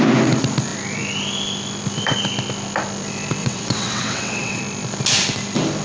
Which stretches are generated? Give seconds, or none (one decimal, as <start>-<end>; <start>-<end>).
3.4-4.6